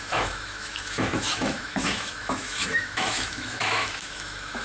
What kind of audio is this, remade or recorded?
remade